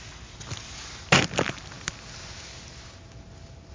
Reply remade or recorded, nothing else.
recorded